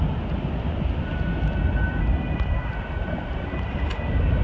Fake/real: real